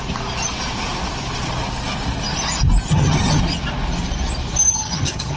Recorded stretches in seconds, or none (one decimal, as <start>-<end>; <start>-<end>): 0.0-2.9; 3.4-4.7

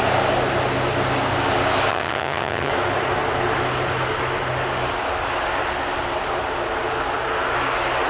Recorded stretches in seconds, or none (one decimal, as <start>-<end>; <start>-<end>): 0.0-1.9; 2.7-8.1

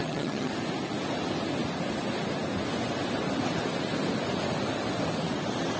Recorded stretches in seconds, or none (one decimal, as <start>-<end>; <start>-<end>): 0.5-5.8

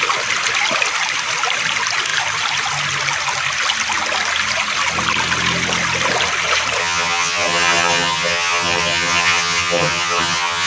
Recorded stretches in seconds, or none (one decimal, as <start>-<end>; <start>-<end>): 0.0-6.8